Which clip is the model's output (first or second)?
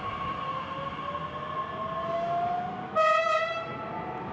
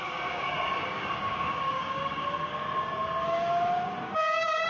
second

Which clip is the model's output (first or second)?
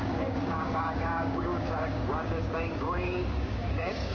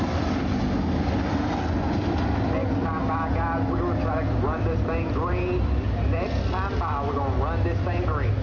first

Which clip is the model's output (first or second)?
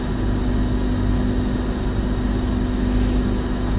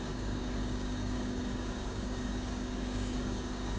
second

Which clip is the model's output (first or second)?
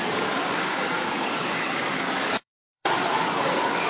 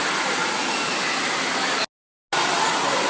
first